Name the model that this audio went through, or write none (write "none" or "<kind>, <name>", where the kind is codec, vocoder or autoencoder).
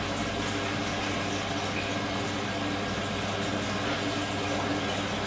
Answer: none